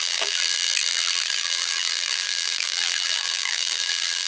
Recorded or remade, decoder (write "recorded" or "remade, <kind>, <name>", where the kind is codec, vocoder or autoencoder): remade, vocoder, BigVGAN v2